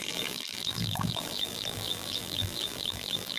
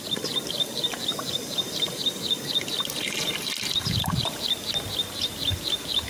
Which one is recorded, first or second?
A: second